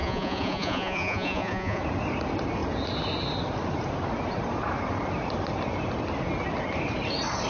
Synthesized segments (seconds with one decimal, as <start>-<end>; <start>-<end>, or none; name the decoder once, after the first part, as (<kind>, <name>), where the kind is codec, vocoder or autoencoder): 0.0-1.8 (vocoder, Vocos)

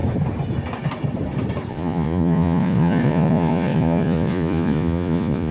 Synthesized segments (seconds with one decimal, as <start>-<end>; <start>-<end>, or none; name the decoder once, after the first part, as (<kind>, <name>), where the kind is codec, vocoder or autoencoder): 1.7-5.5 (vocoder, Vocos)

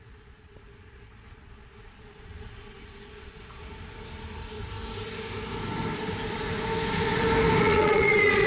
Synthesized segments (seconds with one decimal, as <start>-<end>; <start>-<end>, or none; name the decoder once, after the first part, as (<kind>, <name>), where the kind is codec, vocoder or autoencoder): 0.0-3.6 (vocoder, Vocos); 7.6-8.5

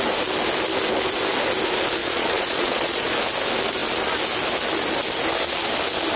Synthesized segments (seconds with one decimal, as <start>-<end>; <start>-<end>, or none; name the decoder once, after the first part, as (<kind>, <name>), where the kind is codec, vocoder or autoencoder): 2.0-3.1 (vocoder, Vocos)

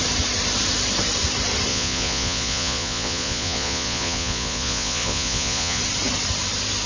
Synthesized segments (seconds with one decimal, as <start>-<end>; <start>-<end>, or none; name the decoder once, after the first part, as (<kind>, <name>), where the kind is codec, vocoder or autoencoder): 1.7-5.8 (vocoder, Vocos)

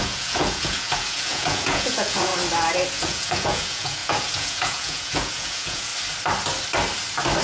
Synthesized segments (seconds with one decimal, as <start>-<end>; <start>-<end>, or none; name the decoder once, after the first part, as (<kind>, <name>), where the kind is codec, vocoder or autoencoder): 0.0-2.3 (vocoder, Vocos); 2.9-5.9